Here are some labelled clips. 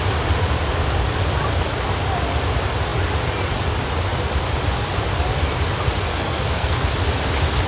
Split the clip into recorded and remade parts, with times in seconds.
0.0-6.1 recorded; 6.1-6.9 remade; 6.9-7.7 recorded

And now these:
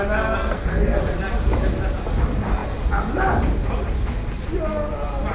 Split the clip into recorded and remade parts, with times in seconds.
0.0-0.4 recorded; 0.4-1.0 remade; 1.0-5.3 recorded

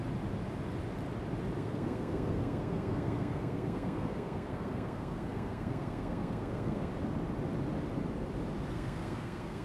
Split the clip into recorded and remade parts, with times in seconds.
0.0-1.6 recorded; 1.6-6.9 remade; 6.9-8.7 recorded; 8.7-9.6 remade

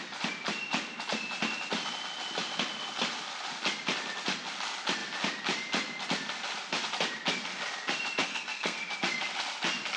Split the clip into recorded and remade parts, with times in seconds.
0.0-8.2 recorded; 8.2-8.9 remade; 8.9-10.0 recorded

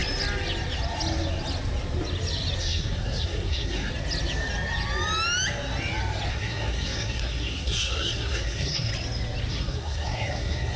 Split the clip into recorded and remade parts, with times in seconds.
0.0-2.6 recorded; 2.6-3.9 remade; 3.9-6.3 recorded; 6.3-8.9 remade; 8.9-9.5 recorded; 9.5-10.8 remade